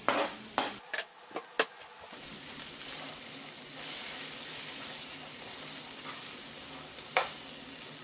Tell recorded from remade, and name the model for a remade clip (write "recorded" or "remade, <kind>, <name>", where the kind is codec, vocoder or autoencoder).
recorded